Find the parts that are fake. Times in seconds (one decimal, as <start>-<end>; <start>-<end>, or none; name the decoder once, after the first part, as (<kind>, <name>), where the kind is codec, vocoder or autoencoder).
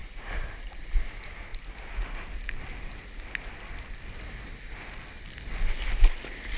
none